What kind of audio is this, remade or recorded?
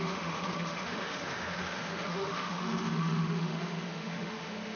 remade